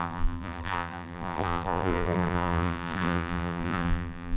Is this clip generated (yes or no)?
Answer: yes